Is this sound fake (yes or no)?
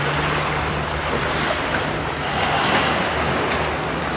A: no